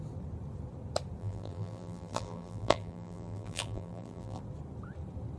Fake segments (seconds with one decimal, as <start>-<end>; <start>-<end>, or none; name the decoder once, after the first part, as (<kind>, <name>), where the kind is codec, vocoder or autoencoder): 1.2-4.4 (vocoder, BigVGAN v2)